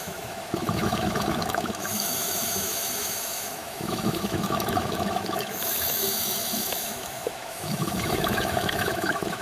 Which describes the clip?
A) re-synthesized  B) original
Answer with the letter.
A